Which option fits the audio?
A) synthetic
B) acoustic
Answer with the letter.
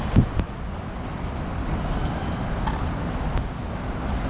B